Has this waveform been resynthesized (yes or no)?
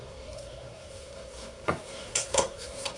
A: yes